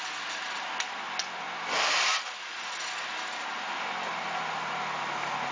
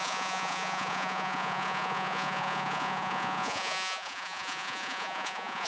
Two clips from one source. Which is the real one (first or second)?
first